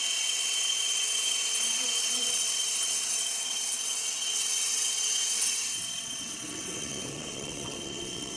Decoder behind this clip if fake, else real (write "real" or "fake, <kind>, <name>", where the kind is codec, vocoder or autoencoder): fake, vocoder, WaveNeXt